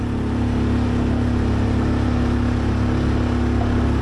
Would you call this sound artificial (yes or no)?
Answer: no